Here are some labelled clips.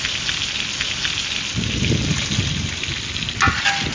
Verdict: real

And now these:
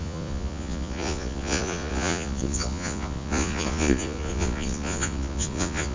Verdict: fake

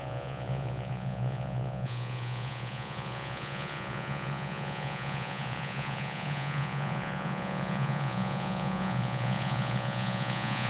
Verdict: fake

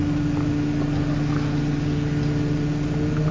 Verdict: real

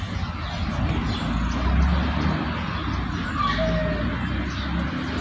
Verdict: real